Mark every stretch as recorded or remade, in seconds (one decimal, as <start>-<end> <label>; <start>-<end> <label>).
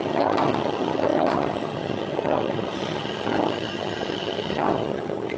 0.0-5.4 remade